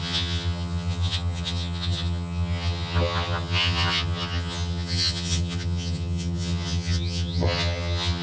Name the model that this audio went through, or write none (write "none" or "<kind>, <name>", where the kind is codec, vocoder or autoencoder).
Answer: vocoder, HiFi-GAN